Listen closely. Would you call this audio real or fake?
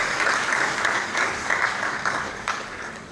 fake